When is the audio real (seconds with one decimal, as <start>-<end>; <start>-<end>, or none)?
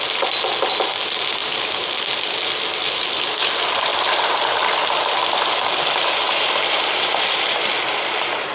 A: 0.0-1.4; 3.4-3.9